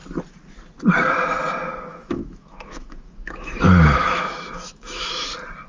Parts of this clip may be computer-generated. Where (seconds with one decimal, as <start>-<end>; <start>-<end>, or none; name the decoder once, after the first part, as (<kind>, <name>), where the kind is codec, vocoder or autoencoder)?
1.9-5.3 (autoencoder, DAC-VAE)